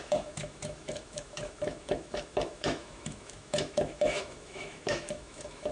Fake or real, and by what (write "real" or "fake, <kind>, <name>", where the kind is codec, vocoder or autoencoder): fake, autoencoder, DAC-VAE